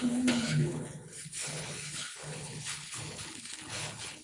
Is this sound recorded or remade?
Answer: remade